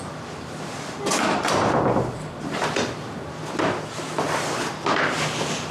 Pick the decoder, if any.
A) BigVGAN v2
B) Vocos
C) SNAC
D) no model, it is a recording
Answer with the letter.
D